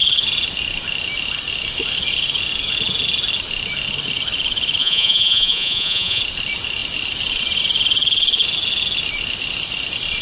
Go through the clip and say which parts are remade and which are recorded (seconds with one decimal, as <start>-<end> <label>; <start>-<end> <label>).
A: 0.0-4.8 recorded; 4.8-6.2 remade; 6.2-10.2 recorded